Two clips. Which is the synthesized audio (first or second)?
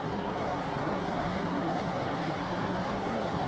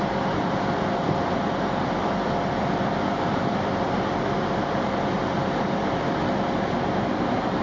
first